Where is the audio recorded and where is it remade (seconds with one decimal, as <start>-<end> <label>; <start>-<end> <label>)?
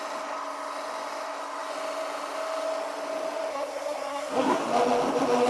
0.0-3.5 recorded; 3.5-4.6 remade; 4.6-5.5 recorded